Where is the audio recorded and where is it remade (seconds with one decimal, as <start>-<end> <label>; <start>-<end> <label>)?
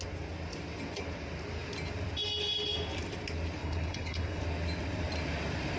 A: 0.0-3.6 recorded; 3.6-4.4 remade; 4.4-5.8 recorded